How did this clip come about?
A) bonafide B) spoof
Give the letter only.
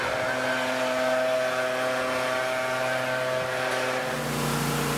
A